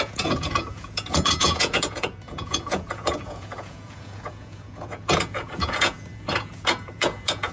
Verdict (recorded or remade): remade